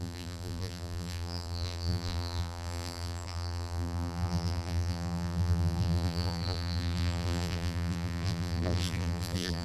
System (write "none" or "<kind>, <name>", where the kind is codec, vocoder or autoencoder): vocoder, BigVGAN v2